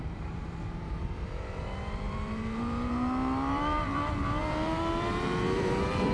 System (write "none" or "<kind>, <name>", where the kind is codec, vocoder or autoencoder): vocoder, BigVGAN v2